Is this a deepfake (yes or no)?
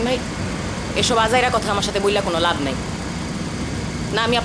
no